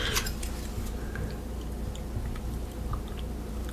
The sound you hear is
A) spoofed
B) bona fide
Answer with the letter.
B